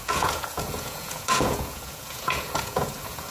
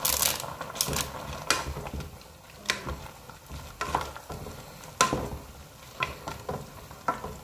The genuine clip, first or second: second